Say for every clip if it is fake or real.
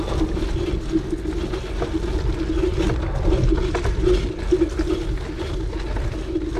real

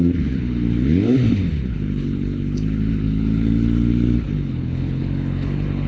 fake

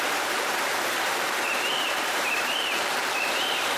fake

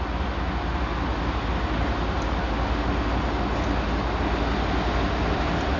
real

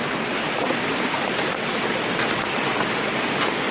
real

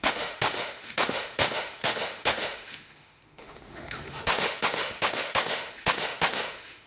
fake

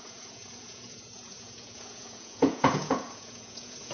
fake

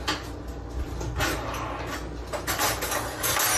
real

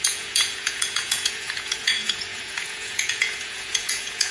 fake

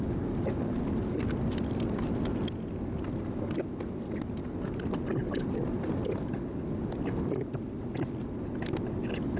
real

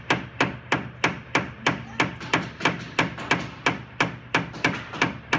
real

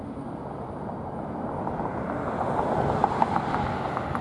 real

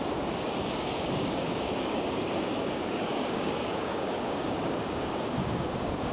fake